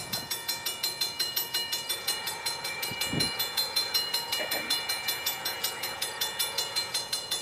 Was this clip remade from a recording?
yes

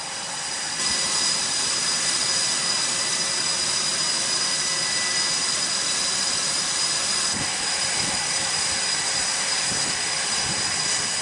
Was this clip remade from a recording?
no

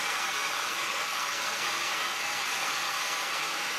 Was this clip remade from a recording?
yes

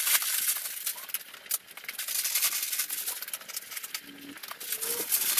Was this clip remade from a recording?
no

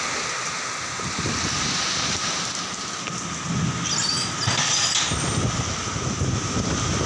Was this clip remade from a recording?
no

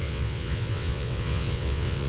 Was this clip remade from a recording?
yes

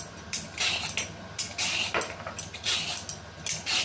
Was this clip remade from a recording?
no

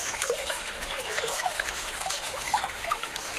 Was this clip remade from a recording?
yes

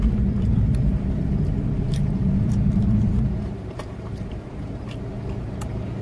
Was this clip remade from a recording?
yes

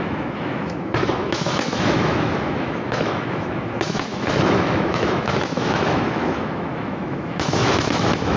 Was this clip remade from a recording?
yes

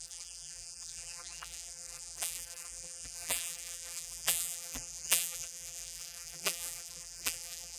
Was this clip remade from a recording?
yes